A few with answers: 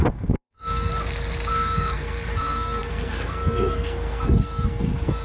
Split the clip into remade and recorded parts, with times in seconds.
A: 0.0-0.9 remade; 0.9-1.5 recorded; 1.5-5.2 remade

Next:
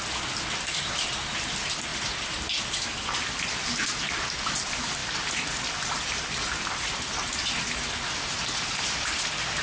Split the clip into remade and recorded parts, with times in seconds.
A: 0.0-9.6 recorded

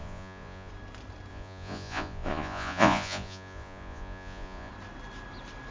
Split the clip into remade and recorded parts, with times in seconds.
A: 0.0-0.7 remade; 0.7-1.3 recorded; 1.3-4.7 remade; 4.7-5.7 recorded

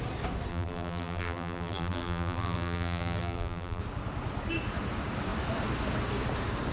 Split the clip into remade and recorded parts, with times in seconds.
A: 0.0-0.5 recorded; 0.5-3.8 remade; 3.8-6.7 recorded